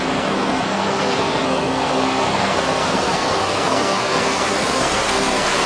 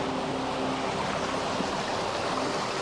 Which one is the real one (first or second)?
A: second